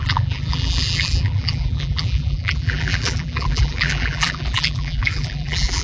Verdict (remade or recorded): remade